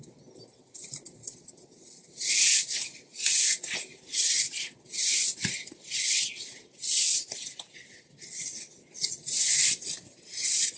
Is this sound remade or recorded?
recorded